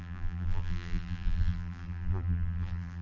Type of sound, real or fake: fake